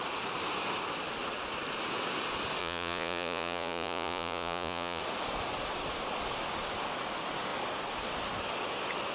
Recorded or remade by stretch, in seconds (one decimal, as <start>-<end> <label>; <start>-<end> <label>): 0.0-2.6 recorded; 2.6-5.0 remade; 5.0-9.1 recorded